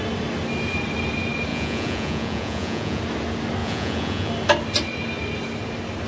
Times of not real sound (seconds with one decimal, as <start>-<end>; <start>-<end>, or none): 1.5-3.0; 3.6-4.3